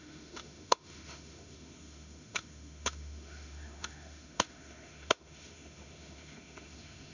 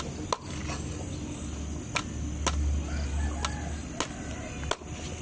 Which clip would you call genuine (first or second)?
second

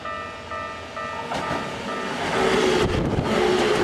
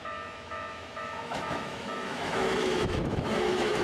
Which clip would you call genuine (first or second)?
first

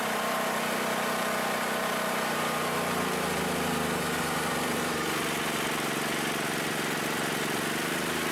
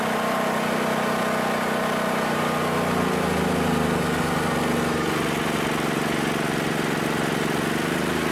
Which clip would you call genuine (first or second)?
second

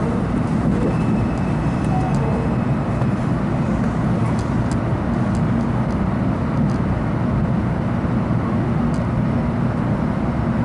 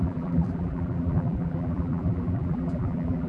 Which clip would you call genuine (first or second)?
first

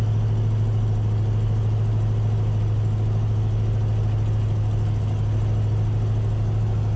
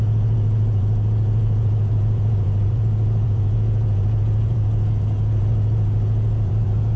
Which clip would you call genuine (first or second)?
first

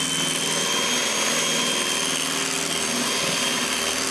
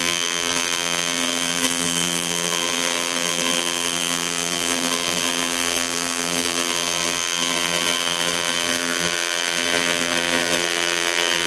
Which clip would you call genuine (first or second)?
first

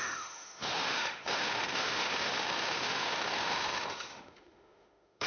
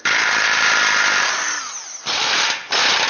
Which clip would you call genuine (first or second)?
second